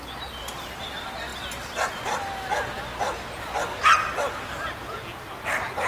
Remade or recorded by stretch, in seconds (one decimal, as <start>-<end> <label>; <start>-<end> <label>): 0.0-5.9 recorded